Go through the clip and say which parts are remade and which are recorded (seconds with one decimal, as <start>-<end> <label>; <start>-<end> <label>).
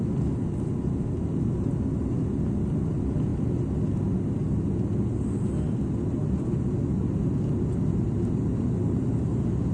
0.0-9.7 recorded